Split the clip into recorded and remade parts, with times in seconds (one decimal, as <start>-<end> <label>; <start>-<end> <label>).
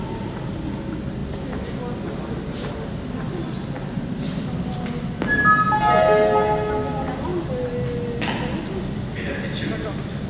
0.0-10.3 recorded